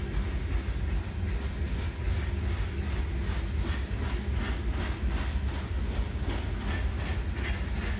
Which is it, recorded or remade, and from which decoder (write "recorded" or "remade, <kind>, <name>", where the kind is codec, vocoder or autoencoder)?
recorded